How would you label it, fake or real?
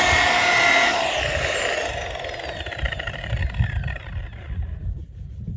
real